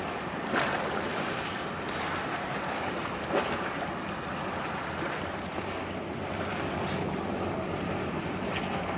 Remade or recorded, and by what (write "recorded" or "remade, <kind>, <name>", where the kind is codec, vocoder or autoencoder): recorded